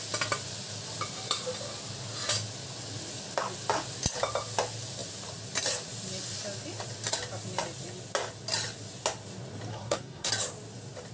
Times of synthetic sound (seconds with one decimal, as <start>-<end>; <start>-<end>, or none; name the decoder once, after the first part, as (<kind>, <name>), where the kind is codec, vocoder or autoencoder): 9.7-10.3 (codec, SNAC)